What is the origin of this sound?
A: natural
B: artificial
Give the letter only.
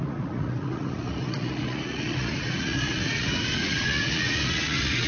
B